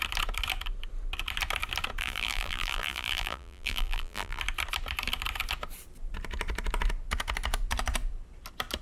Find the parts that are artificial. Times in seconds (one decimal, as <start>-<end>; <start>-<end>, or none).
2.0-4.4